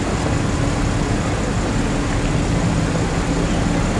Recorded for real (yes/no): yes